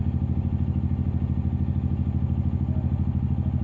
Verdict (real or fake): real